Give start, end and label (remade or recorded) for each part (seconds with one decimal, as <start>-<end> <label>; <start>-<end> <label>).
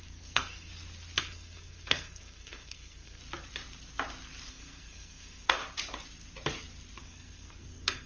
0.0-0.7 remade; 0.7-1.2 recorded; 1.2-3.2 remade; 3.2-4.5 recorded; 4.5-5.6 remade; 5.6-7.0 recorded; 7.0-8.1 remade